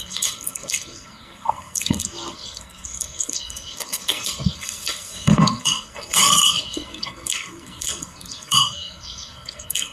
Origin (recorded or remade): remade